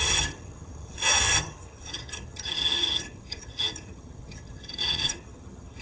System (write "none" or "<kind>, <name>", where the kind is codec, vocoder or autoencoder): vocoder, HiFi-GAN